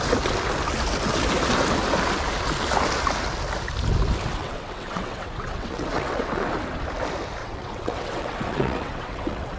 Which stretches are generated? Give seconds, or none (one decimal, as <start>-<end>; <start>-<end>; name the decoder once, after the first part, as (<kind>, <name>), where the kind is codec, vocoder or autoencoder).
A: 4.4-6.5 (vocoder, WaveNeXt); 7.4-9.6